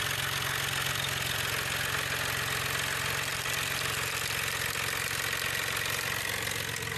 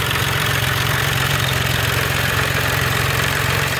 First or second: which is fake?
second